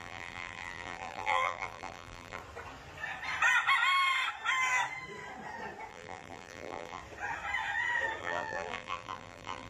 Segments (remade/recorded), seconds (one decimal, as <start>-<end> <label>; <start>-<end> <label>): 0.0-2.4 remade; 2.4-5.9 recorded; 5.9-7.0 remade; 7.0-8.2 recorded; 8.2-9.7 remade